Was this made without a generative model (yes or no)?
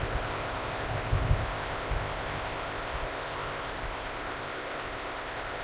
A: no